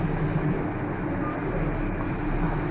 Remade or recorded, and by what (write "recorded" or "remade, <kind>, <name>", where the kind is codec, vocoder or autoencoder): recorded